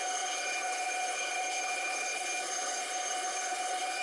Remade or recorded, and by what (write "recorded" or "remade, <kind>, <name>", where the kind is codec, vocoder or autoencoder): remade, codec, HILCodec